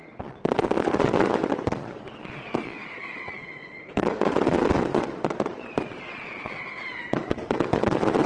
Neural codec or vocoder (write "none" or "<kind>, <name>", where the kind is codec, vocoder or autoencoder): vocoder, Vocos